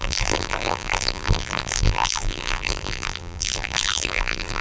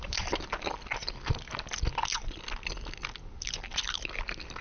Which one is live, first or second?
second